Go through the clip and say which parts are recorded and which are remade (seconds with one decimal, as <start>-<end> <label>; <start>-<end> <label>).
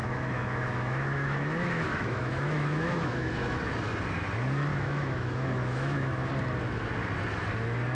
0.0-3.6 remade; 3.6-4.7 recorded; 4.7-6.3 remade; 6.3-7.9 recorded